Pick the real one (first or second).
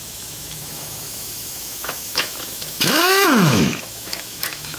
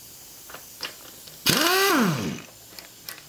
second